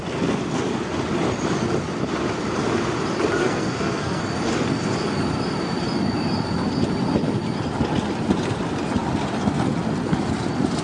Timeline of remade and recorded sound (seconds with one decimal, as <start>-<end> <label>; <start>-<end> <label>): 0.0-3.4 recorded; 3.4-4.2 remade; 4.2-10.8 recorded

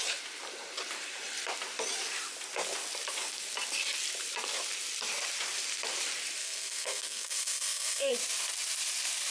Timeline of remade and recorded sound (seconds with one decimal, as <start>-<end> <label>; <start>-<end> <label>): 0.0-6.4 recorded; 6.4-8.1 remade; 8.1-9.3 recorded

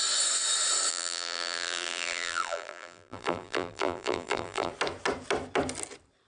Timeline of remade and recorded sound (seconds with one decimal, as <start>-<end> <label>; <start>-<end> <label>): 0.0-0.9 recorded; 0.9-4.7 remade; 4.7-6.3 recorded